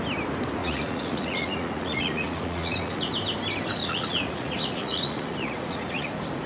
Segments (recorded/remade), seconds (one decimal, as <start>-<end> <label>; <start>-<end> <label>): 0.0-0.6 recorded; 0.6-3.1 remade; 3.1-3.8 recorded; 3.8-6.1 remade; 6.1-6.5 recorded